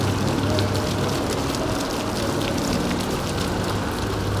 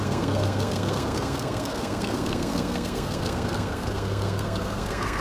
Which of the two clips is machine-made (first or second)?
second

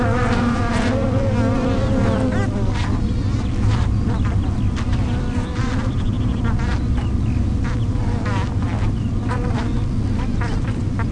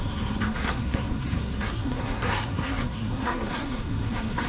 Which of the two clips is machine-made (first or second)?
second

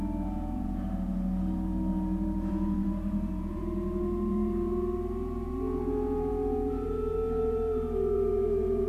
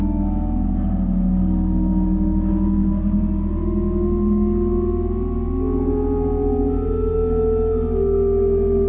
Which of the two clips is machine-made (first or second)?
first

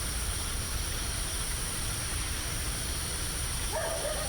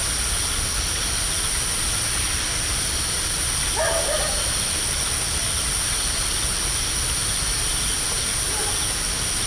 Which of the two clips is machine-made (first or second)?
first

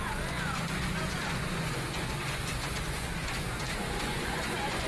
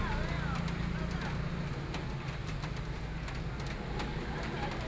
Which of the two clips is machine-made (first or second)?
first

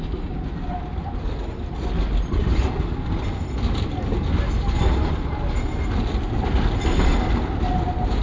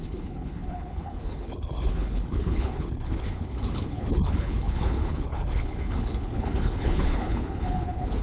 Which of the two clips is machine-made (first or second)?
second